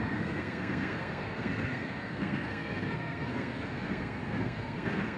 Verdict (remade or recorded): remade